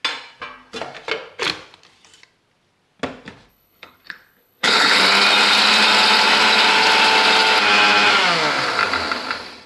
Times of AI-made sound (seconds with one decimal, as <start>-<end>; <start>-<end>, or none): 3.5-5.0